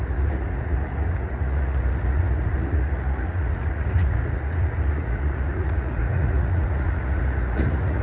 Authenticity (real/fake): fake